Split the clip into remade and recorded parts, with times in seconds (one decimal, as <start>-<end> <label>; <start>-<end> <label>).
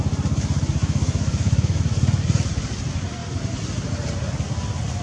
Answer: 0.0-0.8 recorded; 0.8-1.8 remade; 1.8-5.0 recorded